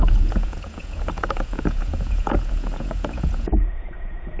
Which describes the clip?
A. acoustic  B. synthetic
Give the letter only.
B